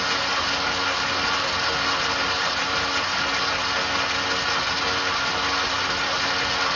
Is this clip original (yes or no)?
yes